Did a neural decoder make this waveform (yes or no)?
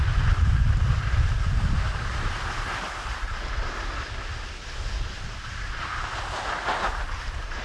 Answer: no